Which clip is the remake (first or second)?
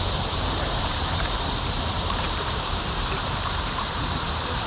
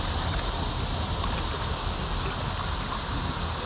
first